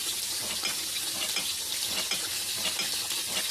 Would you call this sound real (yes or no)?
yes